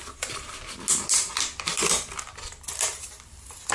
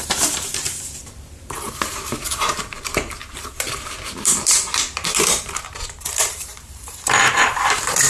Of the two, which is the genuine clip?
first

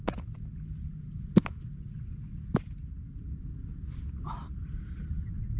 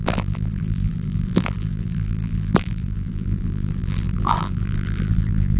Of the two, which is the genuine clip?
first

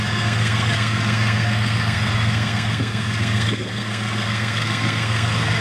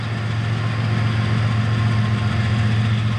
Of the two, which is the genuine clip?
second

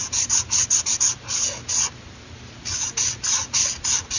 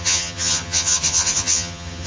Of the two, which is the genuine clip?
first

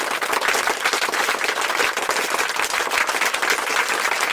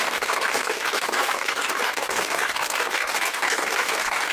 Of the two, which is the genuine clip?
first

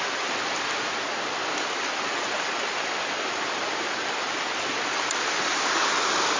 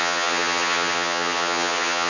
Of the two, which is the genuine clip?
first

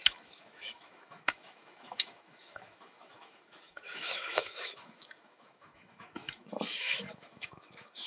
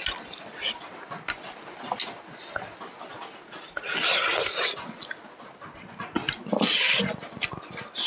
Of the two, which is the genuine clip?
second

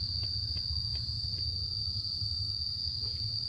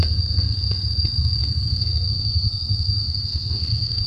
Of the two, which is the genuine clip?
first